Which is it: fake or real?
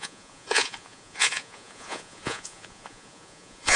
fake